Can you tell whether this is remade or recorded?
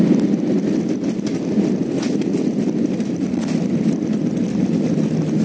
recorded